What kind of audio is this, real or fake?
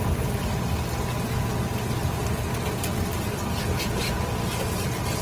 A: real